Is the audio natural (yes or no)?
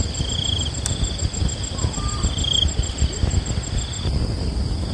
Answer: yes